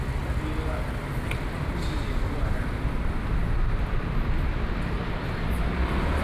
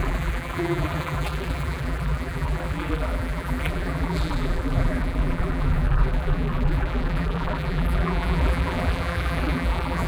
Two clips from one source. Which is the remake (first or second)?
second